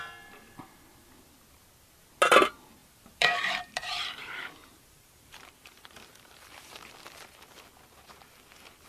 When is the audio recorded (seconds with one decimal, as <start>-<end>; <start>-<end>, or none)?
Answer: 0.0-2.8; 6.8-8.9